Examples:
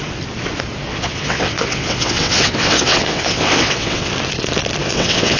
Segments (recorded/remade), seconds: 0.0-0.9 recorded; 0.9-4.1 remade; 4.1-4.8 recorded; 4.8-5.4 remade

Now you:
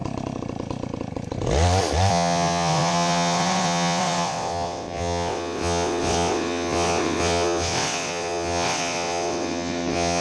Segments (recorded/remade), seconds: 0.0-2.1 recorded; 2.1-10.2 remade